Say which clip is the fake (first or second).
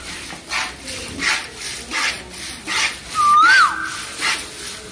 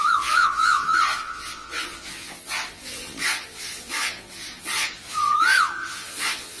second